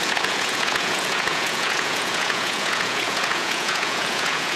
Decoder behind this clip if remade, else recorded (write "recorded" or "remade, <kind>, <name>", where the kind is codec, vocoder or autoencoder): remade, vocoder, Vocos